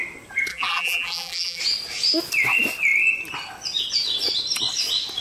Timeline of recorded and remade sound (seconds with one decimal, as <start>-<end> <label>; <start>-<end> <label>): 0.0-0.5 recorded; 0.5-1.6 remade; 1.6-5.2 recorded